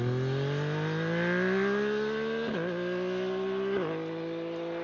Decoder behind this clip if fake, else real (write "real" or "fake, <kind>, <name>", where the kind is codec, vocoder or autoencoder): real